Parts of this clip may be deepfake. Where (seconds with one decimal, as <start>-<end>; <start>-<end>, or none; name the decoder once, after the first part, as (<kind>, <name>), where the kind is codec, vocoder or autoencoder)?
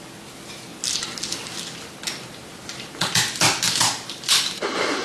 none